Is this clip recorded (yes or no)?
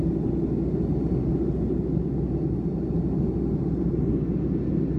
yes